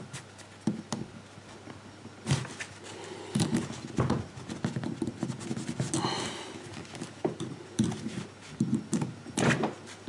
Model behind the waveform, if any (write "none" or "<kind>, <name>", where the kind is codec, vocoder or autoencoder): none